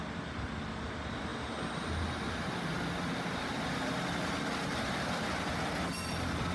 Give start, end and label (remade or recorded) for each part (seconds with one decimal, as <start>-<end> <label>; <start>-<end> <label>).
0.0-6.5 recorded